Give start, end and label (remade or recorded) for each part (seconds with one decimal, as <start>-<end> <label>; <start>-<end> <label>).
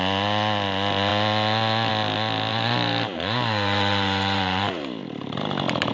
0.0-2.5 recorded; 2.5-5.9 remade